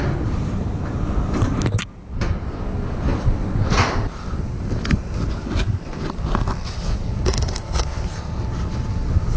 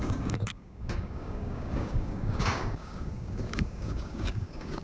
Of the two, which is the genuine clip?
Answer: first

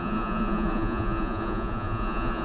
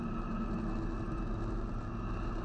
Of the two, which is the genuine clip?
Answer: second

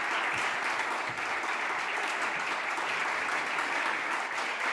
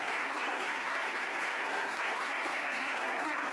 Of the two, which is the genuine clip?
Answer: first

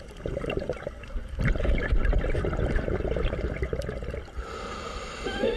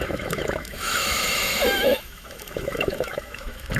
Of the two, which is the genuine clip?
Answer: first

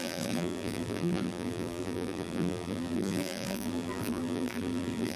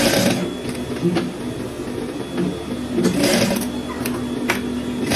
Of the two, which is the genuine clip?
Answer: second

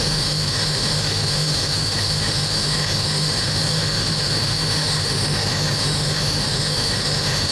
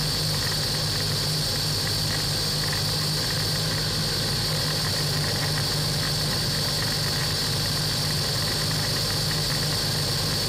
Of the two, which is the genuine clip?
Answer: second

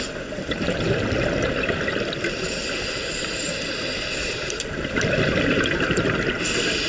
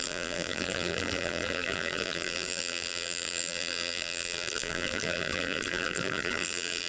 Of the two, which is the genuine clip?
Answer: first